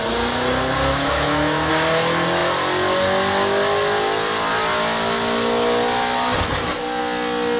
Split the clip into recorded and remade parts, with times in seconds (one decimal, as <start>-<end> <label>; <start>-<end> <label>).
0.0-0.9 recorded; 0.9-1.7 remade; 1.7-7.6 recorded